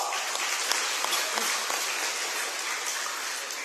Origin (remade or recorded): recorded